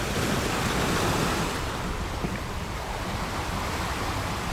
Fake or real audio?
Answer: real